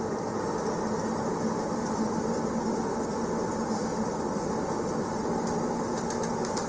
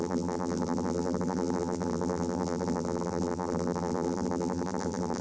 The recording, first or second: first